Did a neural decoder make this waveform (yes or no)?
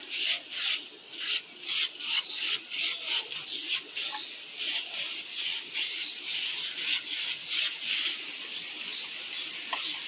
no